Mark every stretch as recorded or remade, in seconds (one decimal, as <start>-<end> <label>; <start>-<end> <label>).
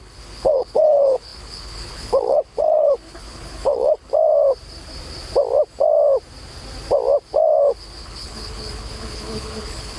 0.0-4.1 remade; 4.1-7.7 recorded; 7.7-10.0 remade